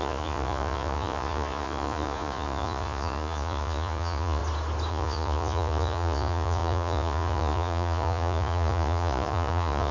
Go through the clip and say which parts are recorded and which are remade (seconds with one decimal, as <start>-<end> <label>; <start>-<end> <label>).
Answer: 0.0-4.4 remade; 4.4-4.9 recorded; 4.9-9.9 remade